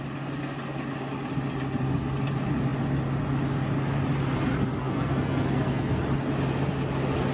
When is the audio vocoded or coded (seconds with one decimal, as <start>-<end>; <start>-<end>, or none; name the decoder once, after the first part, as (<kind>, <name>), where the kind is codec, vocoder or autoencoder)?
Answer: 4.8-6.0 (codec, SNAC)